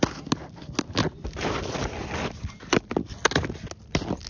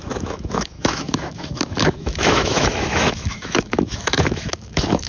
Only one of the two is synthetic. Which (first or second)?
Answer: second